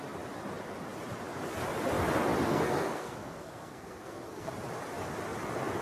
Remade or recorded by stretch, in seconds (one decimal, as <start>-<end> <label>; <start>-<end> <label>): 0.0-2.5 recorded; 2.5-4.5 remade; 4.5-5.8 recorded